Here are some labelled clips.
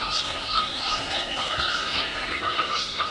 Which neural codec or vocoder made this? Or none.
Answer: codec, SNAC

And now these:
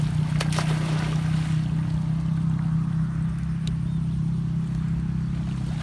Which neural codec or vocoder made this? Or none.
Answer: none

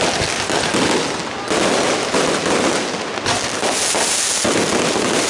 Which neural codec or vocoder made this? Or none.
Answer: none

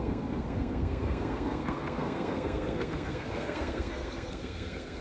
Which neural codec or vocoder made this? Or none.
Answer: codec, SNAC